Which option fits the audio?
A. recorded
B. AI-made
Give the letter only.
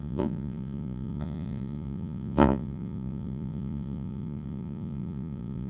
B